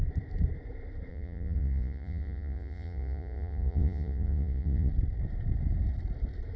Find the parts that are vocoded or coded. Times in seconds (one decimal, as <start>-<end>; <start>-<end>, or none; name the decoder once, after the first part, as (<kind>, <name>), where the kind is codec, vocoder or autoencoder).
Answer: 1.1-4.9 (vocoder, Vocos)